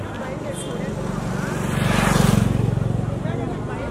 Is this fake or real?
real